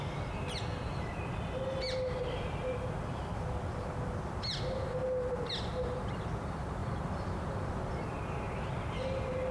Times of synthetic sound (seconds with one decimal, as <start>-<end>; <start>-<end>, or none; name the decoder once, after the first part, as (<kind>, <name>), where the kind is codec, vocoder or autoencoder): none